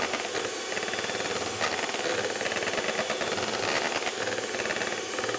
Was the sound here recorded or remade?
recorded